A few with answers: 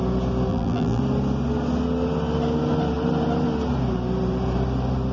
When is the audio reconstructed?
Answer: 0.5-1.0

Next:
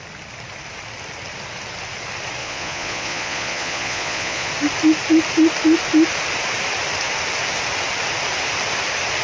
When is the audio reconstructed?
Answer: 2.4-4.5

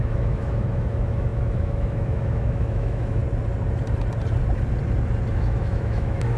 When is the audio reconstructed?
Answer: 0.0-3.2; 5.3-6.4

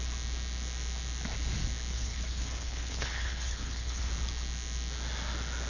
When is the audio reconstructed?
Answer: 1.9-4.1

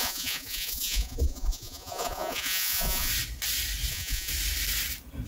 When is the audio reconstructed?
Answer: 0.0-3.1; 3.9-4.3